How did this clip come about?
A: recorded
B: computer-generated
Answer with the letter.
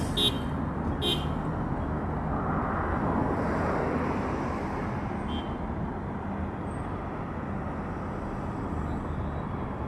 A